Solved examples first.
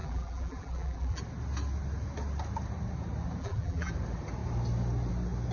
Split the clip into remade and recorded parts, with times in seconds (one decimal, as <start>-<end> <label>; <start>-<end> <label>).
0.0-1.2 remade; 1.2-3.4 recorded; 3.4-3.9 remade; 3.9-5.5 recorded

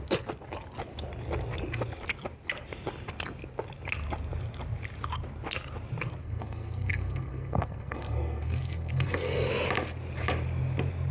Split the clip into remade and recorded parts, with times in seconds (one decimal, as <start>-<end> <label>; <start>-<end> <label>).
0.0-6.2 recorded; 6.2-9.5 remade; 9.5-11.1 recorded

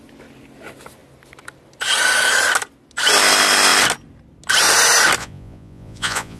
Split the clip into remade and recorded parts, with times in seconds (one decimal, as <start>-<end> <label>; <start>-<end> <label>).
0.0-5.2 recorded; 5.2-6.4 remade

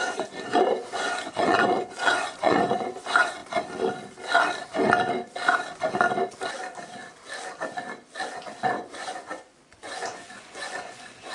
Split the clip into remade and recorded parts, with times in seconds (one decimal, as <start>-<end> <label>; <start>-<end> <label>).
0.0-3.4 remade; 3.4-8.7 recorded; 8.7-11.3 remade

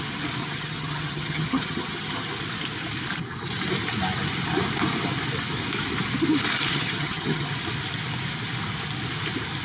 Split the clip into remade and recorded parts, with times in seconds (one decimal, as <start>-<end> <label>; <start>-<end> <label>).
0.0-0.4 recorded; 0.4-2.3 remade; 2.3-6.7 recorded; 6.7-7.5 remade; 7.5-9.6 recorded